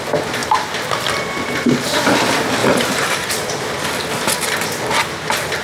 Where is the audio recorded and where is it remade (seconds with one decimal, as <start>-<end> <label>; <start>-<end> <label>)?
0.0-2.6 recorded; 2.6-3.3 remade; 3.3-5.6 recorded